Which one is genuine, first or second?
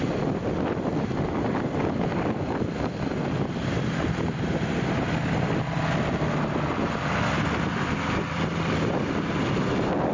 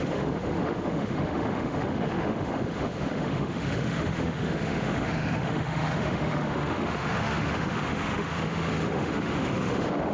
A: first